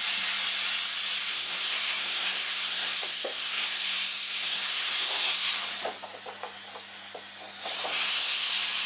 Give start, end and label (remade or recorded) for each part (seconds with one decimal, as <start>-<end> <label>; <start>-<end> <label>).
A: 0.0-1.3 recorded; 1.3-5.5 remade; 5.5-7.9 recorded; 7.9-8.5 remade; 8.5-8.9 recorded